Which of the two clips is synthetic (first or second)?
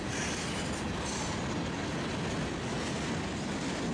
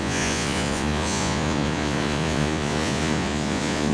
second